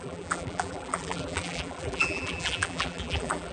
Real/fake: fake